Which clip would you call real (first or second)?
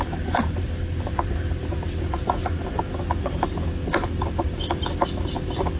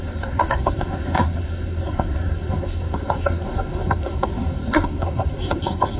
first